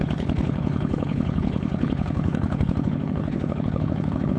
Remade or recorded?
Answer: remade